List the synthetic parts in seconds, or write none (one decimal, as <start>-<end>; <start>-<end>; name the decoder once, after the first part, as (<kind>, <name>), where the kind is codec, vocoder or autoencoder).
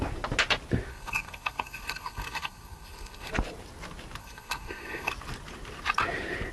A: 0.9-3.3 (codec, SNAC); 4.2-5.1